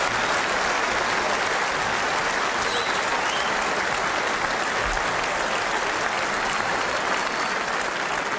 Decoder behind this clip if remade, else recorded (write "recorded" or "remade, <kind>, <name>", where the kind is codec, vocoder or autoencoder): recorded